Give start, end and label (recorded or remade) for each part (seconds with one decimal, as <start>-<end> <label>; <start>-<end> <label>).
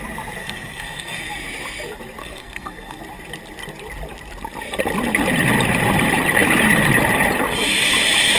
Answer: 0.0-0.4 recorded; 0.4-1.4 remade; 1.4-2.2 recorded; 2.2-3.0 remade; 3.0-8.4 recorded